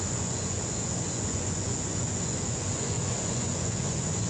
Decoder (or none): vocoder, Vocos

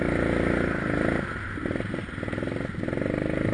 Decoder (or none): none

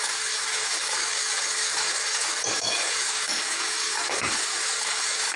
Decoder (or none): codec, DAC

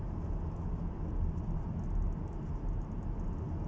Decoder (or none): none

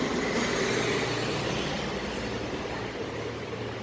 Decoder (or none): none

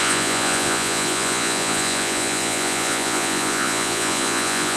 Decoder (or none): vocoder, Vocos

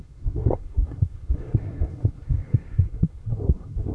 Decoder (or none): codec, SNAC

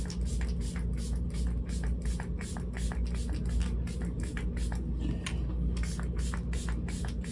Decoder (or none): none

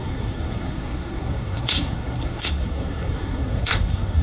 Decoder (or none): codec, SNAC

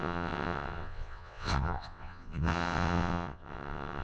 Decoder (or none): vocoder, WaveNeXt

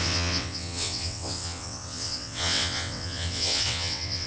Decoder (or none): vocoder, WaveNeXt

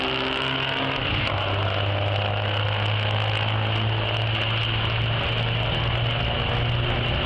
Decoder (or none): none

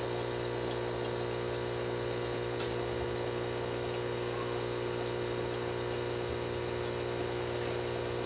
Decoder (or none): none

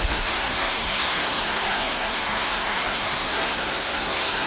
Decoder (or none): codec, SNAC